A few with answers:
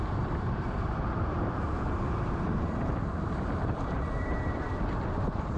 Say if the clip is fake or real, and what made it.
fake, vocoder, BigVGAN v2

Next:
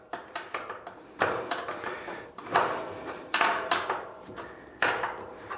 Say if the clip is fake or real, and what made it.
real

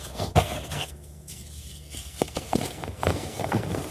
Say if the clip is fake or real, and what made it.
fake, codec, SNAC